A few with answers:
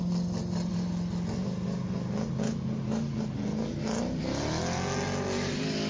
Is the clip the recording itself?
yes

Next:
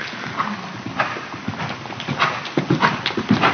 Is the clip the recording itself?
yes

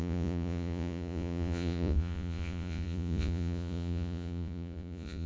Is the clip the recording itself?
no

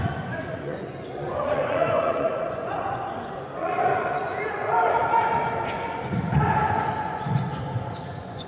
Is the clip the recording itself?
no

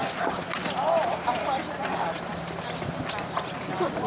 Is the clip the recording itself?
yes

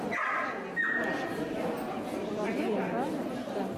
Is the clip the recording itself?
yes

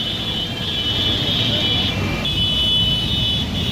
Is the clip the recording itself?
yes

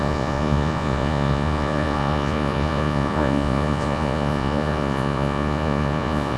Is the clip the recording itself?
no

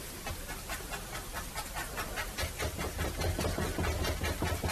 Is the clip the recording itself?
yes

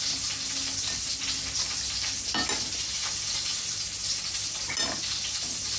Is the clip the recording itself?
yes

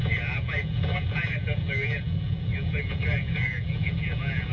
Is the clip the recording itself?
no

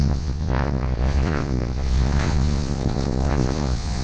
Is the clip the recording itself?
no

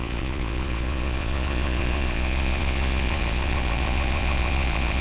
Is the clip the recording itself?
no